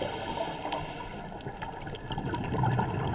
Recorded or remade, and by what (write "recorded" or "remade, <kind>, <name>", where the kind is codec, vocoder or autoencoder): recorded